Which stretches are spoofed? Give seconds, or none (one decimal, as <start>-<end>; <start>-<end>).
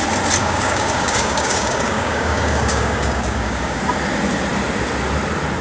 0.4-3.8